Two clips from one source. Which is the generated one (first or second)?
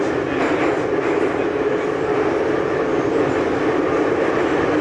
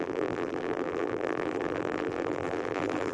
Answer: second